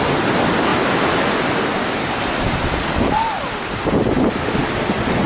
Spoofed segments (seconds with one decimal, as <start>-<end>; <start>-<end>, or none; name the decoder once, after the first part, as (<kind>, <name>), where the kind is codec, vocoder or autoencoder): none